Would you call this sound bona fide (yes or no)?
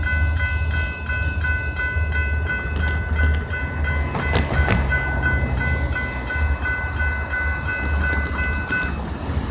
yes